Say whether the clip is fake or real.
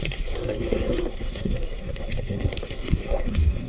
fake